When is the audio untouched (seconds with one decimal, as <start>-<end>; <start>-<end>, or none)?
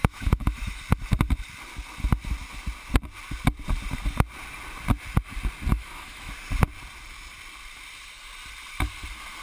0.8-5.7; 6.3-9.4